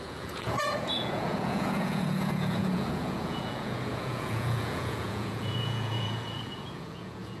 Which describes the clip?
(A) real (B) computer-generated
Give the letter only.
B